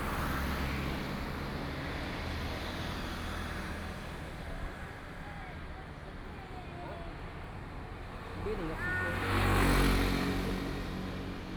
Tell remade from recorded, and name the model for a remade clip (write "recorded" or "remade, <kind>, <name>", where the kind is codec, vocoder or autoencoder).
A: recorded